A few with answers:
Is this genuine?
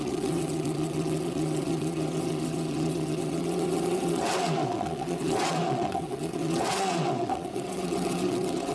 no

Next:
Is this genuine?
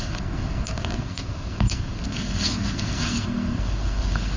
no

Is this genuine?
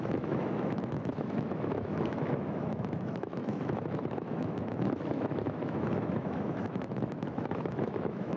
no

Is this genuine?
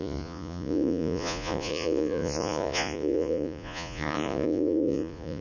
no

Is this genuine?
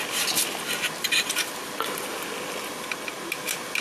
yes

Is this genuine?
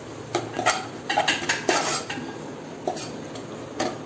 yes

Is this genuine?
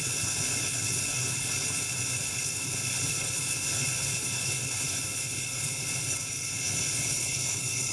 no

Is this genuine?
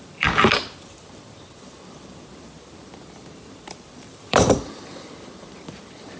no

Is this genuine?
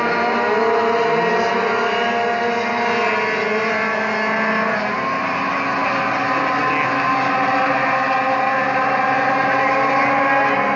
yes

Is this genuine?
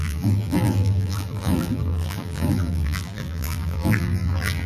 no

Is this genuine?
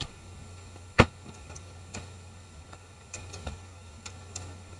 no